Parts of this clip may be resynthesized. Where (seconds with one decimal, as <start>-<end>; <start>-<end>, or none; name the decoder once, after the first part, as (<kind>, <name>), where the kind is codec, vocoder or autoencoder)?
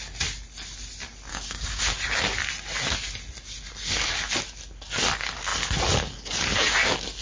1.3-1.8 (codec, DAC)